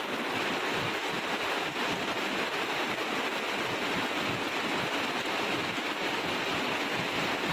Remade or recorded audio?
recorded